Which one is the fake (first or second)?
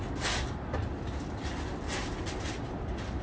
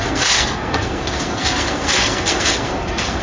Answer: second